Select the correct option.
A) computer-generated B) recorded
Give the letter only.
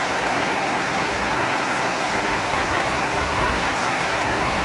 A